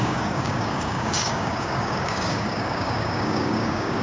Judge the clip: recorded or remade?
remade